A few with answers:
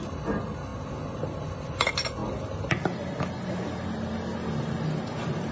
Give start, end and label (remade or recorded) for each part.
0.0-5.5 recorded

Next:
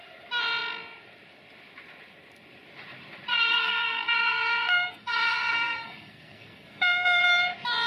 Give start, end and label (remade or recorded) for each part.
0.0-3.3 recorded; 3.3-7.2 remade; 7.2-7.9 recorded

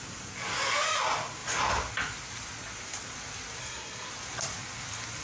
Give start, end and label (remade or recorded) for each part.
0.0-3.6 recorded; 3.6-4.1 remade; 4.1-5.2 recorded

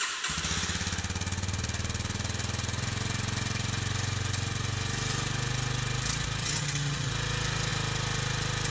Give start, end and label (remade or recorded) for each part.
0.0-6.4 recorded; 6.4-7.1 remade; 7.1-8.7 recorded

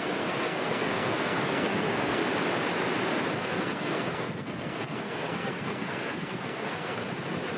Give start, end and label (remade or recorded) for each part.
0.0-2.2 remade; 2.2-3.4 recorded; 3.4-7.0 remade; 7.0-7.6 recorded

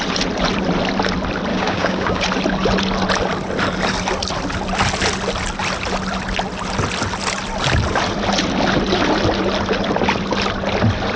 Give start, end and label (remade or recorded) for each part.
0.0-1.5 recorded; 1.5-2.2 remade; 2.2-11.2 recorded

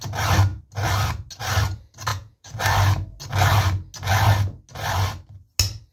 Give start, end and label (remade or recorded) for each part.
0.0-2.1 recorded; 2.1-2.6 remade; 2.6-5.9 recorded